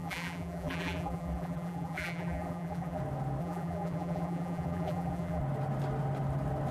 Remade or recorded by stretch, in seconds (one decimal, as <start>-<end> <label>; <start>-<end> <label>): 0.0-3.0 remade; 3.0-3.4 recorded; 3.4-5.4 remade; 5.4-6.7 recorded